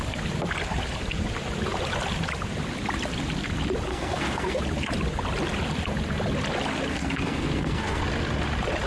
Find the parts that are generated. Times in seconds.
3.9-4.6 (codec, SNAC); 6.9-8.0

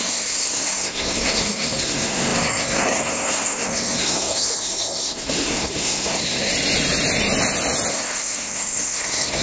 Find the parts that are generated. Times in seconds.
0.0-6.5 (codec, SNAC); 7.9-9.4

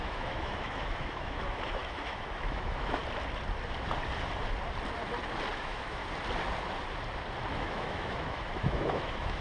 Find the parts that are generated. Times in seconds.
0.0-3.0 (autoencoder, DAC-VAE); 5.6-6.0; 7.5-9.4

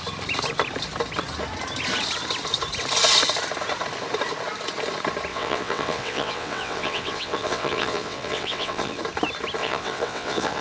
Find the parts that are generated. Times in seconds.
5.3-9.0 (vocoder, WaveNeXt); 9.6-10.6

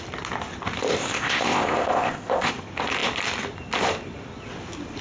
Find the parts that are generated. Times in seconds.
1.0-2.5 (codec, ZipCodec)

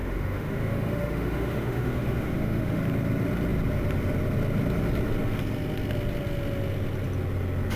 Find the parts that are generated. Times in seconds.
0.0-2.8 (autoencoder, DAC-VAE)